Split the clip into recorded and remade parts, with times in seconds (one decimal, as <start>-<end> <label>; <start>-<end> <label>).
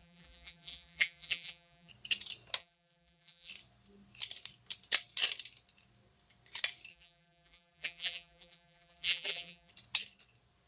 0.0-1.9 remade; 1.9-2.6 recorded; 2.6-3.5 remade; 3.5-6.9 recorded; 6.9-9.7 remade; 9.7-10.7 recorded